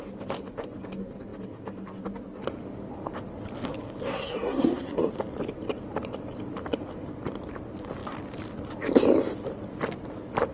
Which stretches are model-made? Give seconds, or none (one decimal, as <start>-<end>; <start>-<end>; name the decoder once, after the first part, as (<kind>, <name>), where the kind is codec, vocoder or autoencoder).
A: 4.1-5.1 (codec, SNAC)